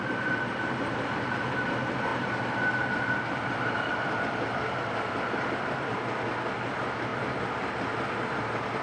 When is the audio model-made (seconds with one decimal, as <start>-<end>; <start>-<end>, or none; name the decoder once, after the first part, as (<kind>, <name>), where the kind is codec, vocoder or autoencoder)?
none